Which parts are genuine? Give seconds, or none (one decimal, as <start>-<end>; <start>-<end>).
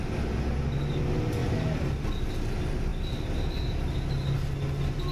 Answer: 0.0-5.1